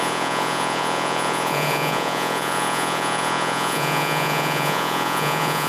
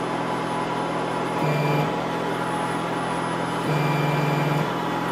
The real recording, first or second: second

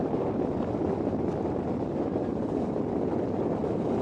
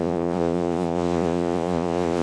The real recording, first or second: first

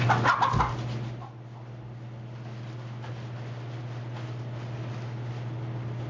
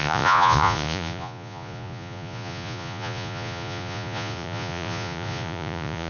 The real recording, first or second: first